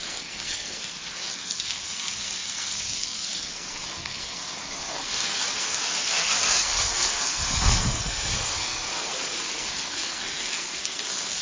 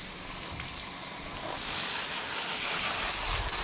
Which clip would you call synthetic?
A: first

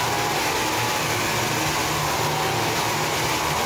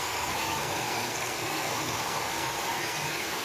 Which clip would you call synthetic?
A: second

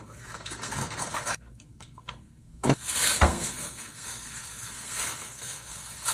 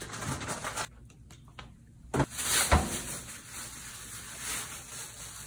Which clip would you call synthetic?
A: first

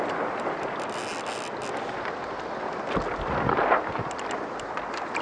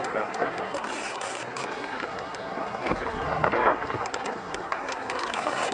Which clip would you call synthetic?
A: second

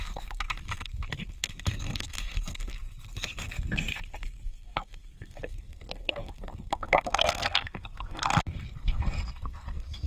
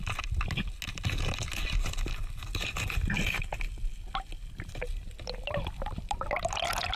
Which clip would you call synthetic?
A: first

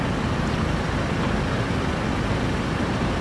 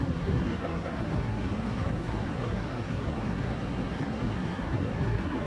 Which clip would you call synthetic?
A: second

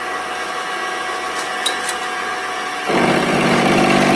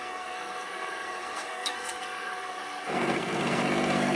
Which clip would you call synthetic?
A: second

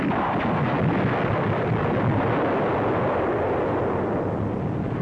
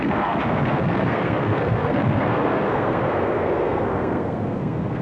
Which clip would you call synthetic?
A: second